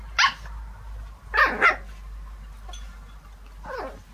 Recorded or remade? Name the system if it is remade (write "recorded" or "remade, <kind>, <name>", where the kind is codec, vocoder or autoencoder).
recorded